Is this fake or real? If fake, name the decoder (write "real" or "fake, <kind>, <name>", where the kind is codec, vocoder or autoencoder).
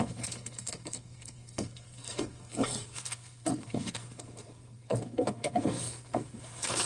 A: fake, codec, SNAC